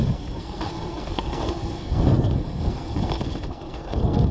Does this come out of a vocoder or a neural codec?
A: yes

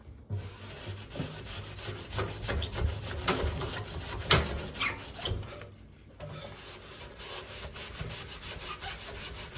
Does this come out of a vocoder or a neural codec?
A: no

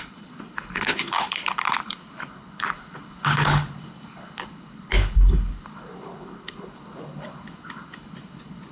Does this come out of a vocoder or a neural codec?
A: yes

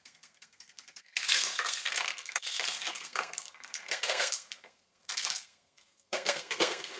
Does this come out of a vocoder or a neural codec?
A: yes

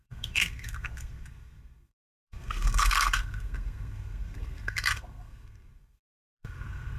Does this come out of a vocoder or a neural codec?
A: yes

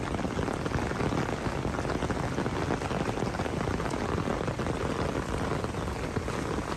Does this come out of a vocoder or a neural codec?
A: no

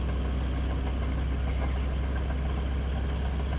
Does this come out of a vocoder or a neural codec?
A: no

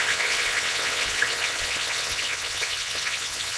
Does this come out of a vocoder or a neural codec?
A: yes